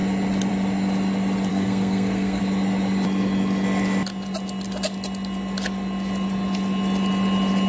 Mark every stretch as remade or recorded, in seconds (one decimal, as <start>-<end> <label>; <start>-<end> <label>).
0.0-1.5 recorded; 1.5-2.4 remade; 2.4-7.7 recorded